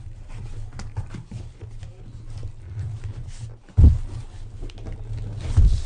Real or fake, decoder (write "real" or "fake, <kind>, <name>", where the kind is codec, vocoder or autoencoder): real